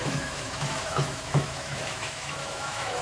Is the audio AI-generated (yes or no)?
yes